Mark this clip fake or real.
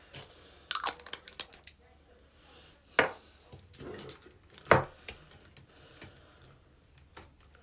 real